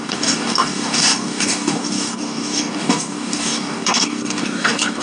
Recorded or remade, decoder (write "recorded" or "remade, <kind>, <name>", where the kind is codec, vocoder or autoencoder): remade, codec, DAC